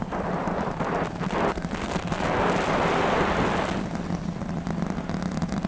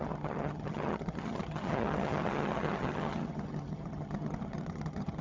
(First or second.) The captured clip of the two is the first